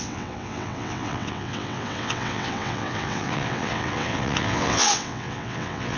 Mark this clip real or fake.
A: fake